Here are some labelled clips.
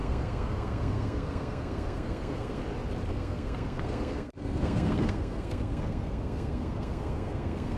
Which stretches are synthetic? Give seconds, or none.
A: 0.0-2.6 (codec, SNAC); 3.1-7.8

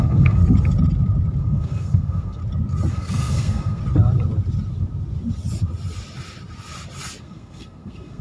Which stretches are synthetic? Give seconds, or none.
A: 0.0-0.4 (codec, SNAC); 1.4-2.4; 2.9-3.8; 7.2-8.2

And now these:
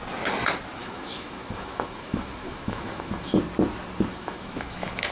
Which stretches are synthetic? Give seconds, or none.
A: 0.8-3.4 (autoencoder, DAC-VAE); 4.1-5.1

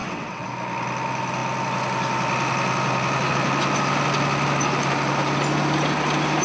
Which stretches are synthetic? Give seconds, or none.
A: 0.0-0.5 (vocoder, WaveNeXt)

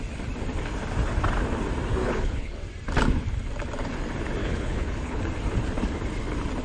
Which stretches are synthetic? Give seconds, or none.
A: 2.0-2.6 (codec, HILCodec); 4.4-5.2

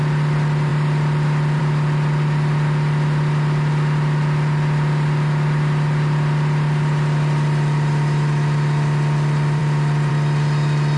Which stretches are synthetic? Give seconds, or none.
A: none

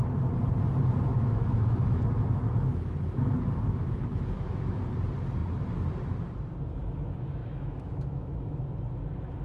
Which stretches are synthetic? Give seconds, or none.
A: 1.1-4.8 (autoencoder, DAC-VAE); 7.4-8.6